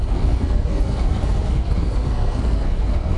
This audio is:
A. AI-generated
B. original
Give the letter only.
A